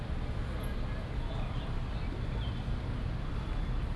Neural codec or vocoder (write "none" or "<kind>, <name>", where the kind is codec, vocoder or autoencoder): none